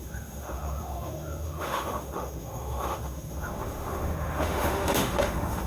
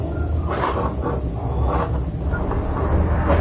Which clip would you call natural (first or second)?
second